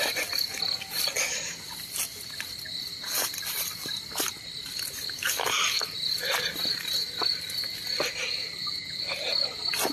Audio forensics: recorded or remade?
recorded